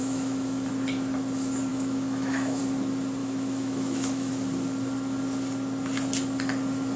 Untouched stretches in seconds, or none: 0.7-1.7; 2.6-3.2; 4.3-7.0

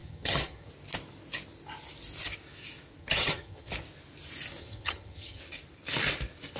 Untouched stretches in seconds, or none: 0.7-3.0; 3.7-4.6; 5.4-6.6

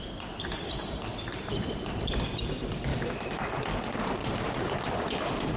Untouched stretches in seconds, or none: 0.0-5.6

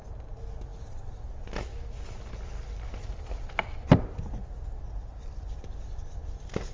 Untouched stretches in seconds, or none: 0.0-6.7

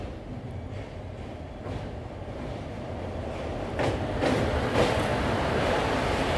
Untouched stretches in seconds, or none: 0.0-6.4